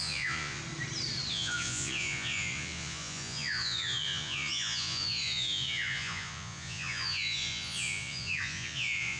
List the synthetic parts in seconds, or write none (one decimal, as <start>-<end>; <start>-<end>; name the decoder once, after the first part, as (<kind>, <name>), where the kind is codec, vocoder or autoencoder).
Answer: 0.0-0.6 (vocoder, Vocos); 1.3-9.2